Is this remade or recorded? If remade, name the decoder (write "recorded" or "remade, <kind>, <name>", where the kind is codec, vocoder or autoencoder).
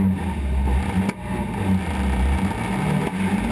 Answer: recorded